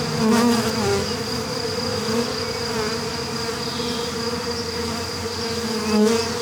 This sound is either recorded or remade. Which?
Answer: recorded